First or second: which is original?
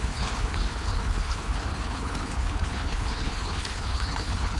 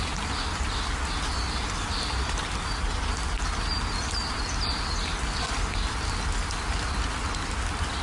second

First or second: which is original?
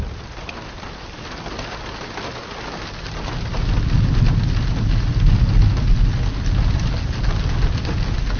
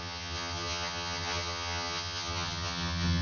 first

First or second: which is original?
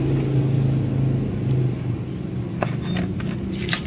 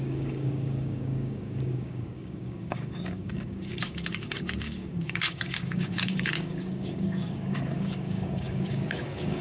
first